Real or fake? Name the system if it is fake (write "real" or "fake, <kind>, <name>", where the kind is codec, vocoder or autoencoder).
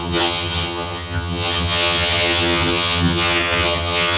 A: fake, vocoder, HiFi-GAN